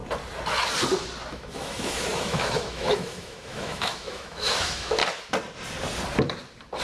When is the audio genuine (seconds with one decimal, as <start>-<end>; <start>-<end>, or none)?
0.0-1.3; 5.0-6.8